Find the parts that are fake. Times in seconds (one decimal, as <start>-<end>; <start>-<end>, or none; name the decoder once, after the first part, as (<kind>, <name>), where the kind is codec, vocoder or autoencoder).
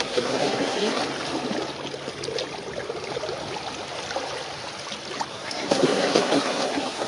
0.0-1.0 (codec, SNAC); 5.3-7.1